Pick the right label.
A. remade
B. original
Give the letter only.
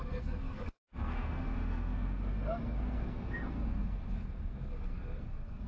A